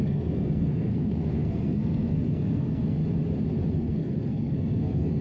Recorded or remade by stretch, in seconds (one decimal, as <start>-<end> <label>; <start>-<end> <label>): 0.0-3.0 remade; 3.0-3.7 recorded; 3.7-5.2 remade